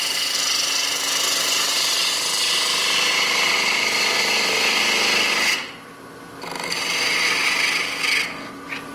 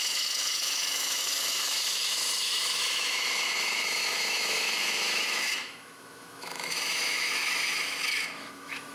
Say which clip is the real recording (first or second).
first